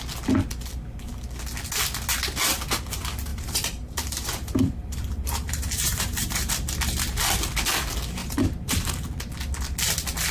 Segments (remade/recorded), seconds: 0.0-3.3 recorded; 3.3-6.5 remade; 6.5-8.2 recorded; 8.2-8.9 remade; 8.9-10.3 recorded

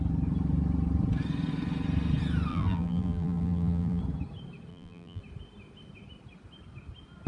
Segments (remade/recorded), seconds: 0.0-2.5 recorded; 2.5-4.0 remade; 4.0-4.7 recorded; 4.7-5.2 remade; 5.2-7.3 recorded

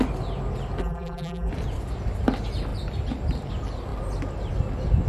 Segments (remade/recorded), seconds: 0.0-0.8 recorded; 0.8-1.5 remade; 1.5-5.1 recorded

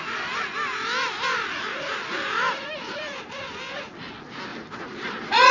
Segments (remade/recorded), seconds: 0.0-1.3 recorded; 1.3-3.8 remade; 3.8-4.5 recorded; 4.5-5.5 remade

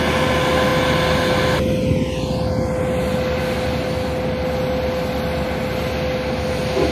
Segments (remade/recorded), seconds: 0.0-6.9 recorded

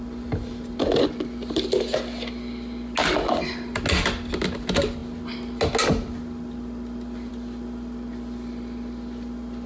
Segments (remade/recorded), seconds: 0.0-9.7 recorded

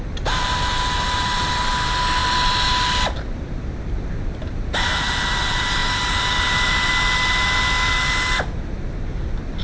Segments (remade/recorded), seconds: 0.0-2.2 recorded; 2.2-3.7 remade; 3.7-5.8 recorded; 5.8-6.9 remade; 6.9-9.6 recorded